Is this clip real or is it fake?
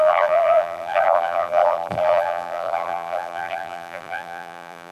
fake